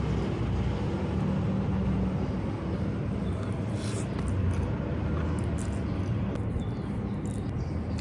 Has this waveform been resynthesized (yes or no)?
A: no